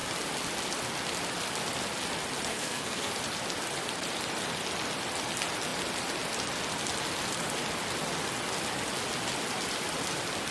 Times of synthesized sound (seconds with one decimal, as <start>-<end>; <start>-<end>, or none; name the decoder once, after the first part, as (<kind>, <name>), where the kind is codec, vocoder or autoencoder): 2.5-3.1 (codec, SNAC)